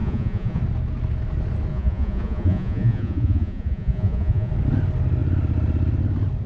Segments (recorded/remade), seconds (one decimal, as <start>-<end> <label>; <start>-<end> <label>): 0.0-0.6 remade; 0.6-1.7 recorded; 1.7-4.5 remade; 4.5-6.5 recorded